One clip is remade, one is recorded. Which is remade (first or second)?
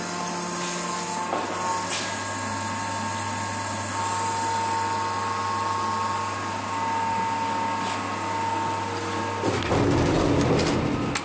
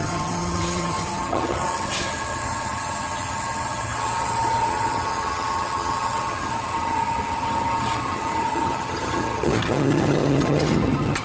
second